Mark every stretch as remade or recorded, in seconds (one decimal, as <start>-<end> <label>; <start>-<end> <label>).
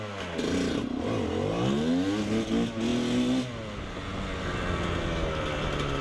0.0-6.0 recorded